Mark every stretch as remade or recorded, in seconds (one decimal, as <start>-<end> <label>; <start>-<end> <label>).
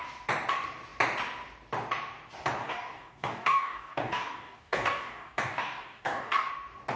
0.0-2.6 recorded; 2.6-6.5 remade; 6.5-7.0 recorded